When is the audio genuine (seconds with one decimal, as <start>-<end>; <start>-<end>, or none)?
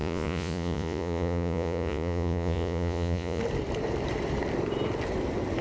3.4-5.6